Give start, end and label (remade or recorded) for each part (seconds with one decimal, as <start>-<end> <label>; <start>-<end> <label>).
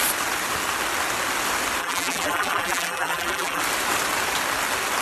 0.0-1.8 recorded; 1.8-3.6 remade; 3.6-5.0 recorded